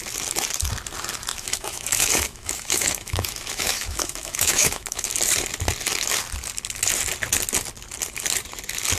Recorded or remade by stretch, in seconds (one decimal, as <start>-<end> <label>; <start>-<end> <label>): 0.0-1.3 recorded; 1.3-5.1 remade; 5.1-9.0 recorded